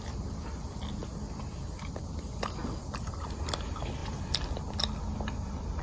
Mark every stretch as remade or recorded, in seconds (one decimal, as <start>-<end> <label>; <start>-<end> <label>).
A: 0.0-4.0 remade; 4.0-5.0 recorded; 5.0-5.8 remade